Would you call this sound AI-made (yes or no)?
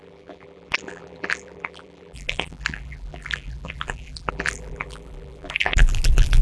yes